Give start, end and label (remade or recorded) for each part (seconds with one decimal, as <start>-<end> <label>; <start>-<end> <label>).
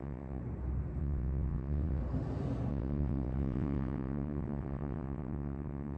0.0-0.4 remade; 0.4-1.0 recorded; 1.0-2.0 remade; 2.0-2.7 recorded; 2.7-6.0 remade